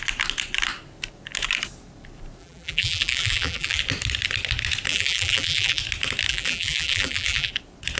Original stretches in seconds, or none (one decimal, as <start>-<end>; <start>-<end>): 0.0-2.4; 3.8-4.9; 5.8-6.3; 7.5-8.0